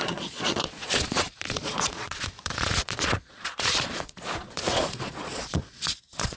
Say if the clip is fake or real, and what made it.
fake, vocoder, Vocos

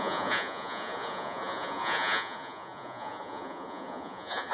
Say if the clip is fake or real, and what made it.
fake, vocoder, Vocos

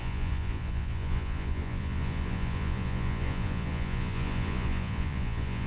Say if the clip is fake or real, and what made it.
fake, vocoder, Vocos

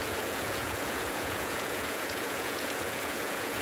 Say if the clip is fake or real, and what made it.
fake, vocoder, Vocos